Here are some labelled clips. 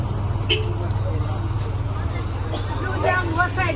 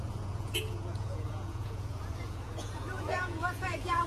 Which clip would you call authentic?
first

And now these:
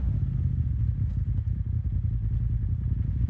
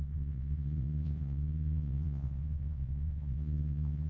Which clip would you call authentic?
first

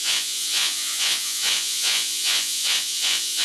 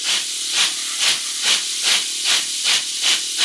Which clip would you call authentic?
second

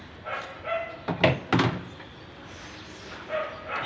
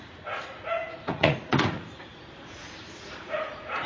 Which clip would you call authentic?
first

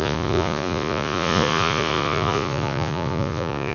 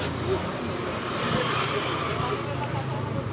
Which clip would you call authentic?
second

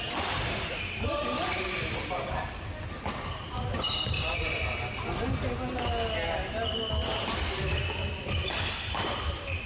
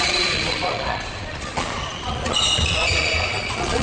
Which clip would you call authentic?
first